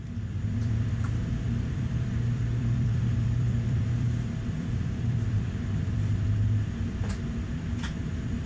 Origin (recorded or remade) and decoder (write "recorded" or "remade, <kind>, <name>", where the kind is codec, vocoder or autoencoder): remade, vocoder, BigVGAN v2